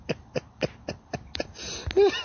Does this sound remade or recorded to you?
recorded